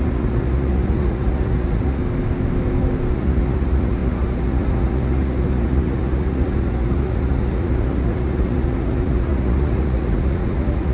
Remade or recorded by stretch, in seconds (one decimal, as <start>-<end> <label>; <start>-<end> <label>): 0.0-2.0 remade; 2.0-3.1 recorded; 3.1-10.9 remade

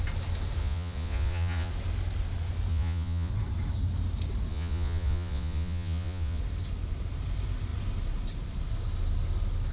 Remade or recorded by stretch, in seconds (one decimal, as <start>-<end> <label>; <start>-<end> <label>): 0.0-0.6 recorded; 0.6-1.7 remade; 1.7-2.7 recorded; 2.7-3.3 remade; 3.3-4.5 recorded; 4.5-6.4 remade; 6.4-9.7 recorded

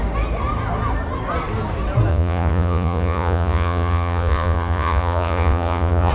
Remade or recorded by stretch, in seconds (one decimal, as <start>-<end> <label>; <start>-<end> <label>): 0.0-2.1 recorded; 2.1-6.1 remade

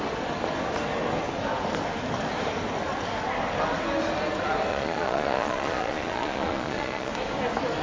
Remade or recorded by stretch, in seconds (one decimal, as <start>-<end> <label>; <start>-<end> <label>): 0.0-4.7 recorded; 4.7-7.1 remade; 7.1-7.8 recorded

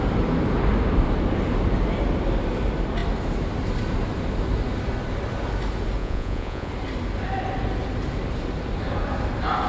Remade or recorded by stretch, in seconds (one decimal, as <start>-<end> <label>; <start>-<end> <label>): 0.0-6.0 recorded; 6.0-6.7 remade; 6.7-9.7 recorded

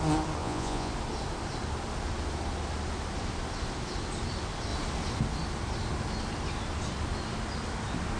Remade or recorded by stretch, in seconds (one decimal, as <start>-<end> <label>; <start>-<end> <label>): 0.0-0.4 recorded; 0.4-0.9 remade; 0.9-8.2 recorded

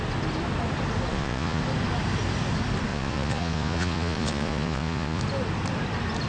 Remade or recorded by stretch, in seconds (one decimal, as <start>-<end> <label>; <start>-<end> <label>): 0.0-1.1 recorded; 1.1-1.6 remade; 1.6-2.9 recorded; 2.9-5.2 remade; 5.2-6.3 recorded

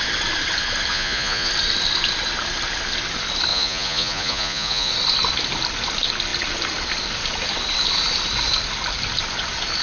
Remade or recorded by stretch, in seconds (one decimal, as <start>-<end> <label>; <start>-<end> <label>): 0.0-0.9 recorded; 0.9-1.5 remade; 1.5-3.5 recorded; 3.5-4.9 remade; 4.9-9.8 recorded